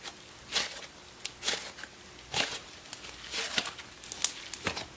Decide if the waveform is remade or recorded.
recorded